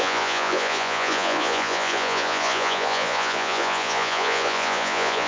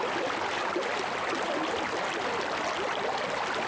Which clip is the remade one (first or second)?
first